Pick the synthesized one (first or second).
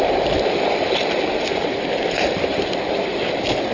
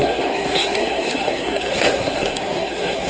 second